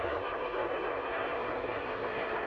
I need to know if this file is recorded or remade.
remade